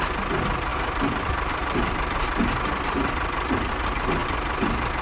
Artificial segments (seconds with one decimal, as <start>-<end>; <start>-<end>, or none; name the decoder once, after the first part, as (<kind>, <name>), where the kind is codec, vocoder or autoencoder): 0.7-3.7 (vocoder, BigVGAN v2)